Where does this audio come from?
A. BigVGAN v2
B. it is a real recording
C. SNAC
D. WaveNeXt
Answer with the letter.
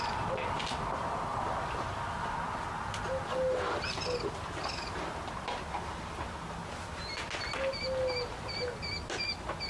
B